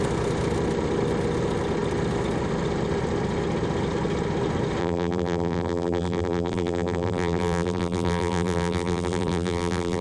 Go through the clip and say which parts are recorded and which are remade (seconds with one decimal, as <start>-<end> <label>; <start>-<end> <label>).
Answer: 0.0-4.8 recorded; 4.8-10.0 remade